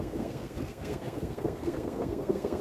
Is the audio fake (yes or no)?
yes